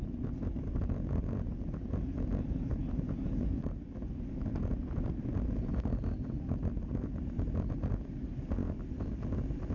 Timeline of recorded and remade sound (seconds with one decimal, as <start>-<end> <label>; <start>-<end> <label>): 0.0-9.7 recorded